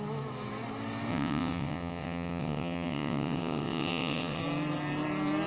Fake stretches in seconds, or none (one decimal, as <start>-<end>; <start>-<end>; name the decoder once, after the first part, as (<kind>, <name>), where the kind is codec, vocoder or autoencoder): 1.1-4.4 (vocoder, WaveNeXt)